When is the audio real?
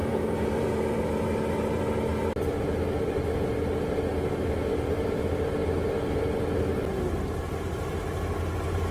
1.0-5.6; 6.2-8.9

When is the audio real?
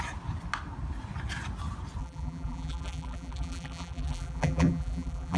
0.0-2.0